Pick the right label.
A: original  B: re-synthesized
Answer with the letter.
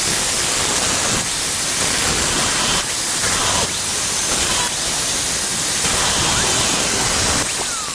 A